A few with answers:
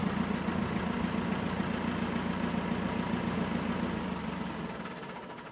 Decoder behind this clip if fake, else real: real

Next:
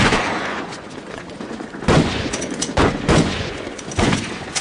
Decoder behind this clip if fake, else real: fake, vocoder, Vocos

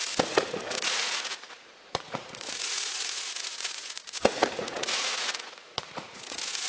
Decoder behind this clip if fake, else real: fake, vocoder, Vocos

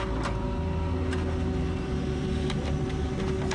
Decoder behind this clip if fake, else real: real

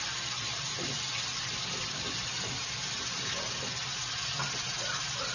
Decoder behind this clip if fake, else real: real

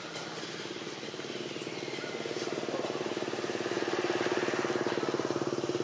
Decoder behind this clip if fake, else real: real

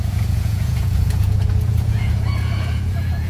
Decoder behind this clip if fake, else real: fake, vocoder, Vocos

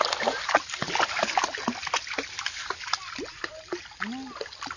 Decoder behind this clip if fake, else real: real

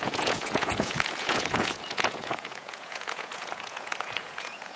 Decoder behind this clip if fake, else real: fake, vocoder, Vocos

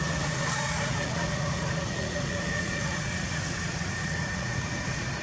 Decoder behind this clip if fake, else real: fake, vocoder, Vocos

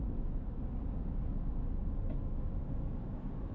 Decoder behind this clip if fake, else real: real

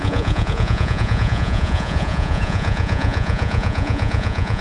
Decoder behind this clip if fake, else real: fake, vocoder, Vocos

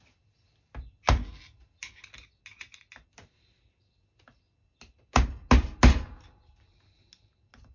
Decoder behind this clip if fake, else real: real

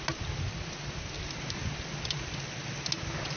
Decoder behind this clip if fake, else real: real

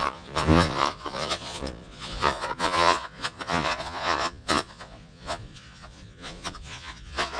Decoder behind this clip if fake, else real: fake, vocoder, Vocos